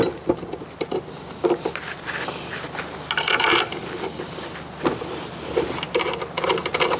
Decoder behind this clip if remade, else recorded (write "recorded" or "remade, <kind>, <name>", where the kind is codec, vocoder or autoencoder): recorded